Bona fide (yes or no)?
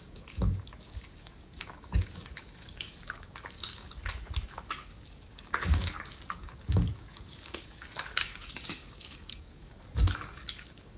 no